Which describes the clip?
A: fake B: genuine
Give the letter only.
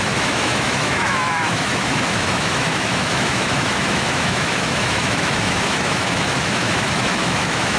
A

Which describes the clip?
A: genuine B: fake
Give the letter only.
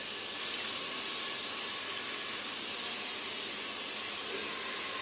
A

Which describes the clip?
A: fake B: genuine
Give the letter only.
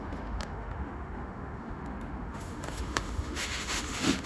A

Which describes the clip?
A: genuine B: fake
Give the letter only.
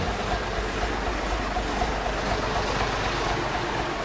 A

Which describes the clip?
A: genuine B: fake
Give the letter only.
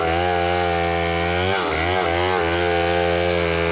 A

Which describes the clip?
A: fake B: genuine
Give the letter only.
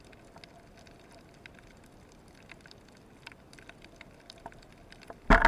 B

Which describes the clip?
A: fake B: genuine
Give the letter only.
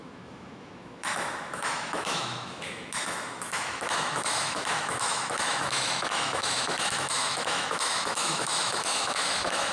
A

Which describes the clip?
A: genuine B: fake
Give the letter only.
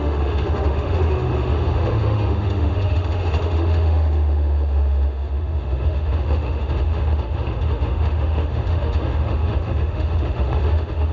B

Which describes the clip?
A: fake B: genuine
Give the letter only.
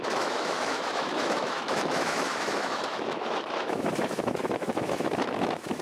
A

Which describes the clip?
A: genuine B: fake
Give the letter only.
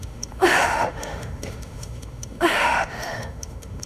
B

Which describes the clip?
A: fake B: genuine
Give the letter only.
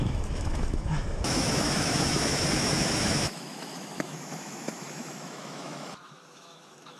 A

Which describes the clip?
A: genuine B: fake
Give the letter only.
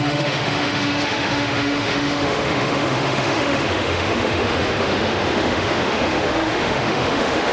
B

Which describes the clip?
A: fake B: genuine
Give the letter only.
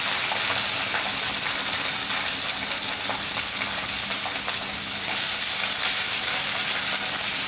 B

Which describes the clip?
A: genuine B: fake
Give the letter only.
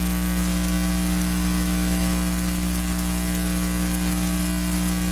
B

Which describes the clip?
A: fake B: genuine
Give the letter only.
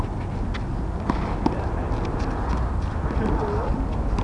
B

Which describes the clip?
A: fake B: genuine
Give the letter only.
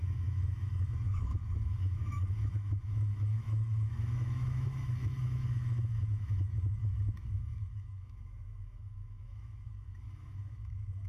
A